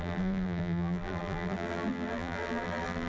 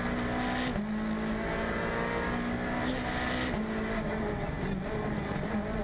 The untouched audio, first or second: second